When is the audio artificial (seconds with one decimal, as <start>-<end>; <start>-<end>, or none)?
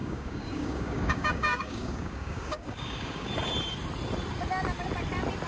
0.0-3.3